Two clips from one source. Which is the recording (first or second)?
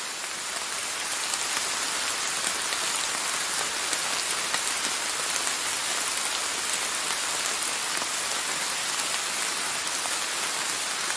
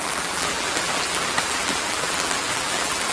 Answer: first